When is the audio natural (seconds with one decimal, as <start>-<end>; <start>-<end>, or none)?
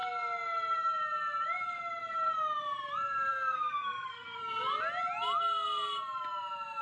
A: 0.0-3.3; 4.4-6.8